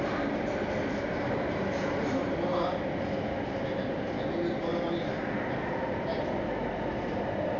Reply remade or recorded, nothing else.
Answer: recorded